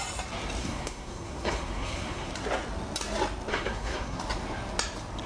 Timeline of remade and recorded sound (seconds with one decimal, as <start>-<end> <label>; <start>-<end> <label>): 0.0-0.6 recorded; 0.6-2.3 remade; 2.3-3.5 recorded; 3.5-4.2 remade; 4.2-5.3 recorded